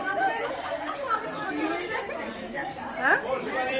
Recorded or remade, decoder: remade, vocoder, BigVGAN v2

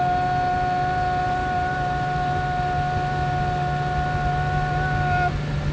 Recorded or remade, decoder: recorded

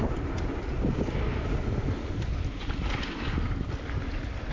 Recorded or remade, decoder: recorded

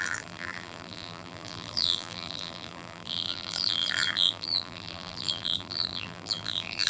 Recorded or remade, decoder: remade, vocoder, BigVGAN v2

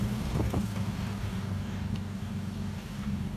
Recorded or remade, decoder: remade, codec, DAC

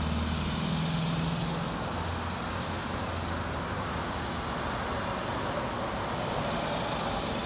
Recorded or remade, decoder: recorded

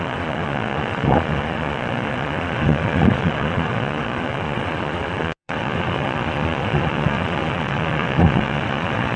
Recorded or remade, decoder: remade, vocoder, Vocos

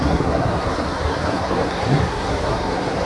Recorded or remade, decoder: remade, codec, SNAC